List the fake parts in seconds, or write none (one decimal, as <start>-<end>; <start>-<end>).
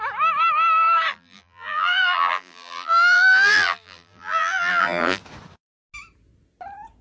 1.1-5.2